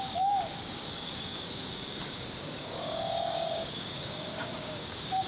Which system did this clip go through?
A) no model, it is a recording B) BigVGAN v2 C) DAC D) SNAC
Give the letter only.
C